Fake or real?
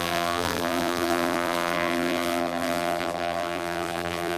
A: fake